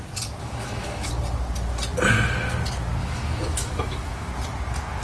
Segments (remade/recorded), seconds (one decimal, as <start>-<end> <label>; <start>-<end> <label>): 0.0-0.4 recorded; 0.4-1.1 remade; 1.1-3.0 recorded; 3.0-4.3 remade; 4.3-5.0 recorded